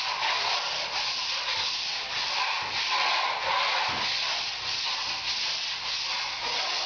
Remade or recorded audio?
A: recorded